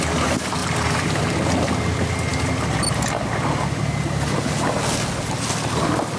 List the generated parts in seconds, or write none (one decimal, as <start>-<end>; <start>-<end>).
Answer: 0.6-1.3